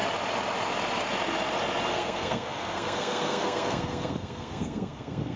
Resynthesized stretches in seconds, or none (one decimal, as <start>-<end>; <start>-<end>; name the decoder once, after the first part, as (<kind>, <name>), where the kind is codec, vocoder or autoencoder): 1.9-5.4 (codec, SNAC)